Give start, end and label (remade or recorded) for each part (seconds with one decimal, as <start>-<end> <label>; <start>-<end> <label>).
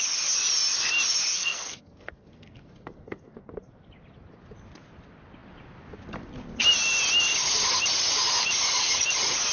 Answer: 0.0-1.3 recorded; 1.3-3.9 remade; 3.9-9.5 recorded